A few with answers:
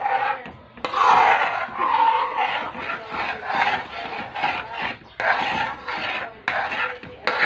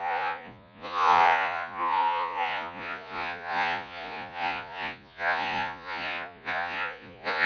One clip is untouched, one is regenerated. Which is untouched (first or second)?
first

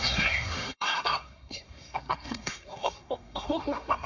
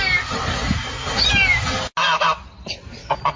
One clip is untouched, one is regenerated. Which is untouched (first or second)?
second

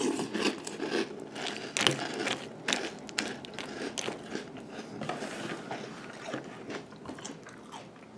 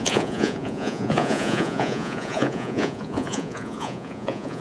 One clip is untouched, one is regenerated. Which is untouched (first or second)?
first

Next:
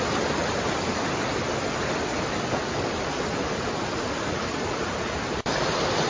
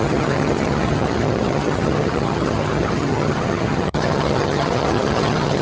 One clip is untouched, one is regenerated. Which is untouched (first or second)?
first